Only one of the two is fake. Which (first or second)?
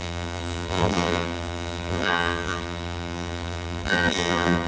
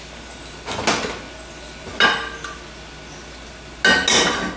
first